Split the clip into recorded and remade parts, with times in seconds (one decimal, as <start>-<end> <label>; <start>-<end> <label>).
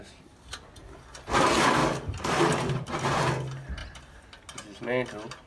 0.0-1.8 recorded; 1.8-3.0 remade; 3.0-5.5 recorded